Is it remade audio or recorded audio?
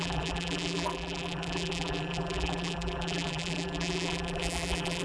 remade